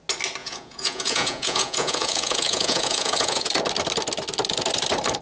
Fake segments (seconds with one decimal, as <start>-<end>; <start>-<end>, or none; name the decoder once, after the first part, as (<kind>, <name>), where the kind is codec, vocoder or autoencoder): 0.4-3.5 (vocoder, Vocos)